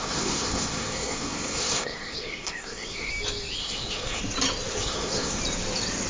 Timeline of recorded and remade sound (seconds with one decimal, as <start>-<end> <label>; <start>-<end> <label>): 0.0-3.1 remade; 3.1-3.6 recorded; 3.6-4.2 remade; 4.2-4.7 recorded; 4.7-5.4 remade; 5.4-6.1 recorded